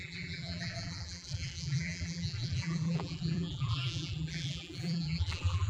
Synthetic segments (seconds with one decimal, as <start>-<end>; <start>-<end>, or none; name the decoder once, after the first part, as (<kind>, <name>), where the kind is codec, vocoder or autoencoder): 0.0-5.7 (vocoder, BigVGAN v2)